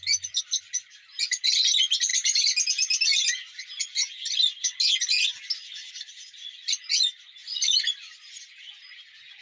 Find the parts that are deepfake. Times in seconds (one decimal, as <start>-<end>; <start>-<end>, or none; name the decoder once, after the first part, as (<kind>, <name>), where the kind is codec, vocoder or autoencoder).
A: none